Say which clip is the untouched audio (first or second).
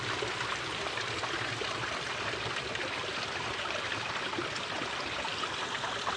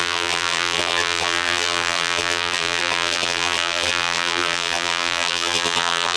first